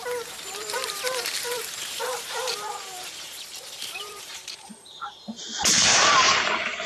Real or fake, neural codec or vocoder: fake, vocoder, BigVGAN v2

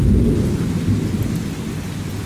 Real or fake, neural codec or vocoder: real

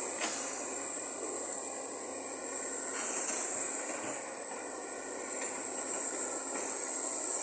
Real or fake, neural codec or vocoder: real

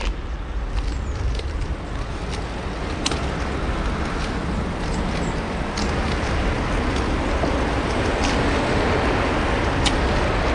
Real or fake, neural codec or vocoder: real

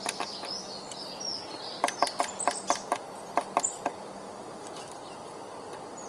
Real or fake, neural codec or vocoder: real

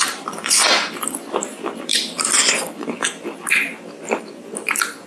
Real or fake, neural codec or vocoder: fake, vocoder, BigVGAN v2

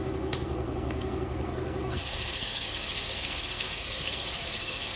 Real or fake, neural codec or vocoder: fake, codec, SNAC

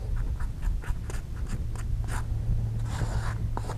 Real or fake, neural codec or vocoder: real